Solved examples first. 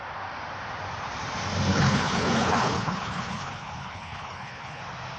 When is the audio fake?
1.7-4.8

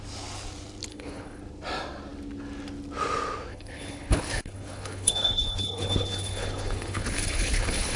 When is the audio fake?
0.9-1.4; 3.5-8.0

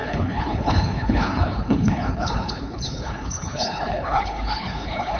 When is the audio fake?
0.0-5.2